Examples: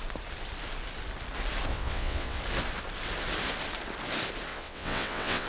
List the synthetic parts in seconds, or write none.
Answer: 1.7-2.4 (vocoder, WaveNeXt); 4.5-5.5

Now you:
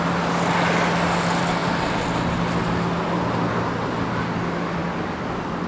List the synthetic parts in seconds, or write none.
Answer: none

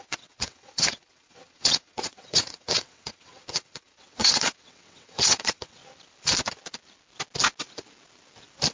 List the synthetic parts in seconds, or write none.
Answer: 0.0-5.8 (vocoder, WaveNeXt)

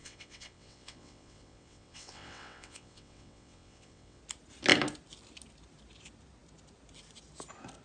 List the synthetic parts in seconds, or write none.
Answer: 0.0-4.2 (vocoder, WaveNeXt)

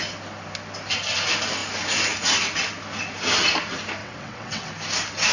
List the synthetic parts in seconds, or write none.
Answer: 4.0-4.7 (vocoder, WaveNeXt)

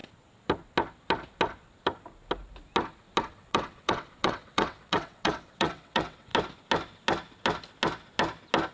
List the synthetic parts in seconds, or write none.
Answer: 3.2-6.3 (vocoder, WaveNeXt)

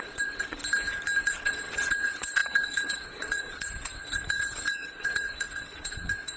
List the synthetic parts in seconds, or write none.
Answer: 0.0-0.6 (vocoder, WaveNeXt); 1.2-6.4

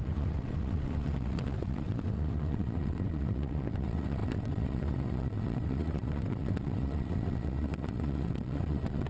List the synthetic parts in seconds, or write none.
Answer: 0.0-9.1 (vocoder, WaveNeXt)